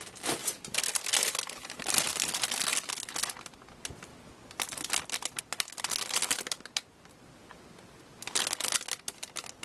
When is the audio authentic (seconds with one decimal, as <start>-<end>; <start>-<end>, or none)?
0.0-9.6